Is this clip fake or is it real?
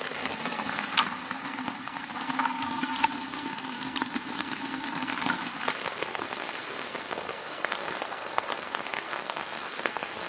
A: fake